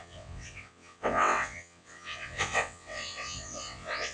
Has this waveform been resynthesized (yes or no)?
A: yes